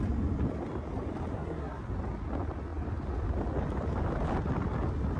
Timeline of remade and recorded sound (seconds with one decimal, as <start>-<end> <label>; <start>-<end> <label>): 0.0-1.3 recorded; 1.3-1.8 remade; 1.8-5.2 recorded